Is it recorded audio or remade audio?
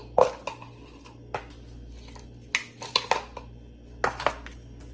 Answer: recorded